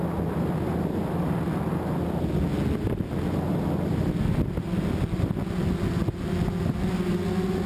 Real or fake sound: real